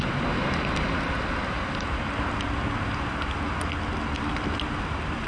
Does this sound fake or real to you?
real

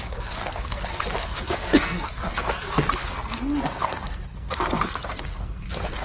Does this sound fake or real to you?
fake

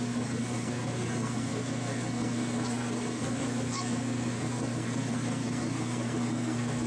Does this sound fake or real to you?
fake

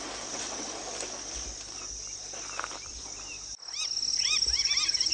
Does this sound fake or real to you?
real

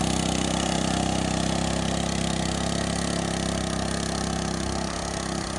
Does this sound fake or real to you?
real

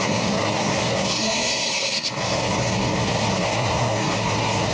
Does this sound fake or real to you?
fake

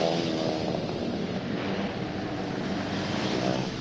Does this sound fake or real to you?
real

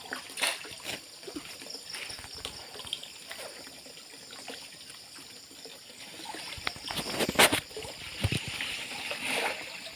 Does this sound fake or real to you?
real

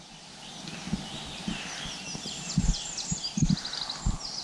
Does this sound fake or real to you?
real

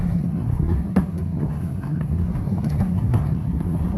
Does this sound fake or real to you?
fake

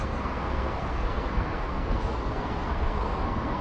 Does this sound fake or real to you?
fake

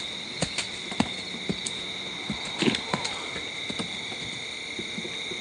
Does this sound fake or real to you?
real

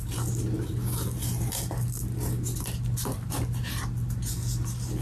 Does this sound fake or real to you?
real